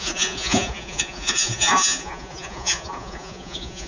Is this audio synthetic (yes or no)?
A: yes